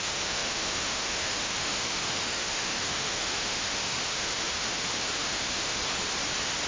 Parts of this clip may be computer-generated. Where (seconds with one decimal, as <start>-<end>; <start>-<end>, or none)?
0.0-5.8